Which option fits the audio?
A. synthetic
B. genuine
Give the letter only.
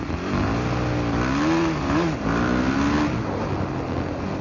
B